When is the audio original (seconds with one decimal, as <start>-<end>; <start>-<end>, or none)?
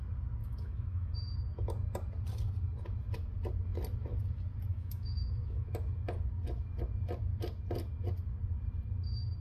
0.0-0.4; 1.3-4.7; 5.7-9.4